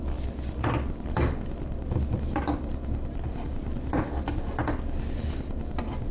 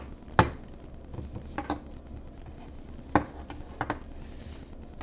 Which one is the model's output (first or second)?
first